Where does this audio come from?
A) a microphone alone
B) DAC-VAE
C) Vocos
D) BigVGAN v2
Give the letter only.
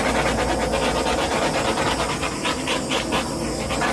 A